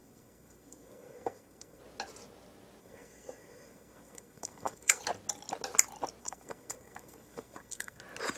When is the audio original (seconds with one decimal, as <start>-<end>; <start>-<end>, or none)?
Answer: 1.8-2.8; 5.0-6.2; 8.0-8.4